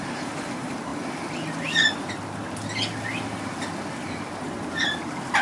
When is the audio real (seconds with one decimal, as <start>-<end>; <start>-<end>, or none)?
0.9-4.1